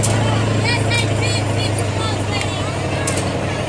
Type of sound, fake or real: real